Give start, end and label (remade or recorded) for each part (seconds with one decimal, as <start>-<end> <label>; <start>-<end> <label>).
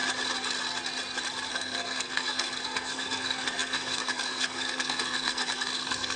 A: 0.0-1.5 recorded; 1.5-6.2 remade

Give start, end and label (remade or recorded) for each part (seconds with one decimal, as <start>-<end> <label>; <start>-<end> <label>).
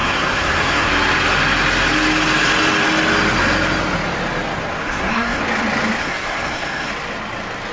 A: 0.0-0.9 remade; 0.9-4.8 recorded; 4.8-5.4 remade; 5.4-6.0 recorded; 6.0-6.9 remade; 6.9-7.7 recorded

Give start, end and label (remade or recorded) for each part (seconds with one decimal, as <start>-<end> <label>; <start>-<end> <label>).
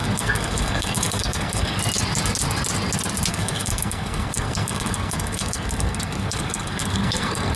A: 0.0-1.8 remade; 1.8-3.3 recorded; 3.3-7.6 remade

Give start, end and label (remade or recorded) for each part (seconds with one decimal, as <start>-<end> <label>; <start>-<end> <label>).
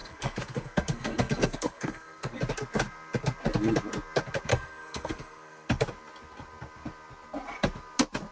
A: 0.0-2.4 remade; 2.4-4.5 recorded; 4.5-5.7 remade; 5.7-8.3 recorded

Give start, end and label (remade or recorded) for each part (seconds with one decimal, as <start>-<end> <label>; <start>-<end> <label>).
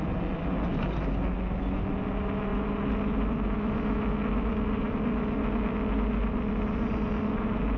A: 0.0-7.8 recorded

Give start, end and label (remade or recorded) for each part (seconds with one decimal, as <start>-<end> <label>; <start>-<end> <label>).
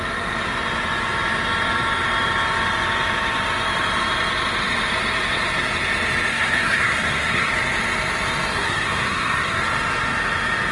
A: 0.0-6.3 recorded; 6.3-7.5 remade; 7.5-8.5 recorded; 8.5-9.6 remade; 9.6-10.7 recorded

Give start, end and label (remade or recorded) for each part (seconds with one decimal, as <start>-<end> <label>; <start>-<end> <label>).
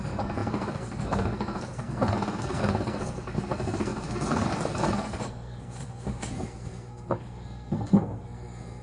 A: 0.0-8.8 remade